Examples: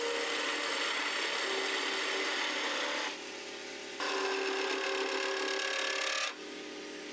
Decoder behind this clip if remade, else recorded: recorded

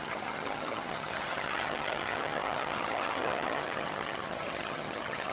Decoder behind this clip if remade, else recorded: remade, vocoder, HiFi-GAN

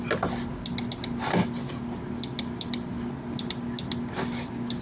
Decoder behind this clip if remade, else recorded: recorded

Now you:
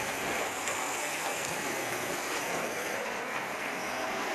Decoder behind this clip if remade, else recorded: remade, codec, SNAC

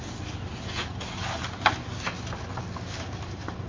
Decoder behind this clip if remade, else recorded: recorded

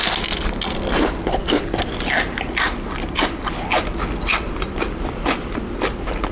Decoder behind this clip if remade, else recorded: recorded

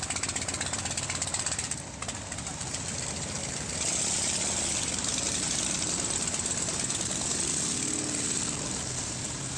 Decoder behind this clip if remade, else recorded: recorded